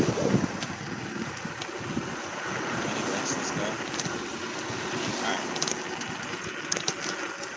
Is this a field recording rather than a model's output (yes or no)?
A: yes